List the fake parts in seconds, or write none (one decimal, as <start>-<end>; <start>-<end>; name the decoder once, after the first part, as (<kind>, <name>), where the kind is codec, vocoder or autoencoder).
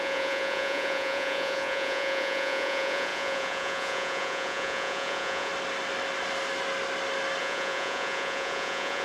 0.0-5.5 (vocoder, Vocos); 7.4-9.0